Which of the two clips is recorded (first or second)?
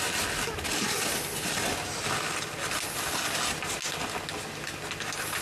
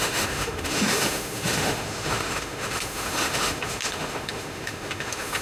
first